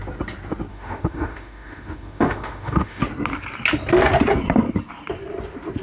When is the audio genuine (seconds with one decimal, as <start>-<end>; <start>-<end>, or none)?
0.0-0.7; 3.0-5.8